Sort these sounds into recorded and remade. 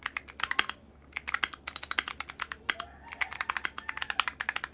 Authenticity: recorded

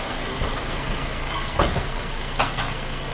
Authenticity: remade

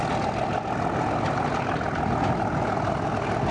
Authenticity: recorded